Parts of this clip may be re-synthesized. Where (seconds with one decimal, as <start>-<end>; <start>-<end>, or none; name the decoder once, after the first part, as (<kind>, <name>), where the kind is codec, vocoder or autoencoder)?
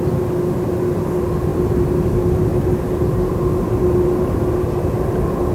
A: none